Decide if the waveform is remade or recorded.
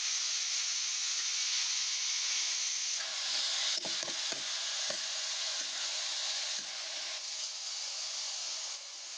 remade